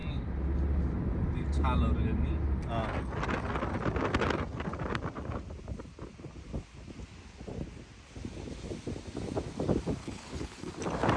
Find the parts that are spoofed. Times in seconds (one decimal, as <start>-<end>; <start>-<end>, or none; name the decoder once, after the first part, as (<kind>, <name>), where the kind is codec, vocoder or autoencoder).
10.0-10.7 (codec, HILCodec)